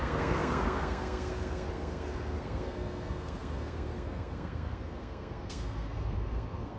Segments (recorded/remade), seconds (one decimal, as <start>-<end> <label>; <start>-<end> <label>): 0.0-6.8 remade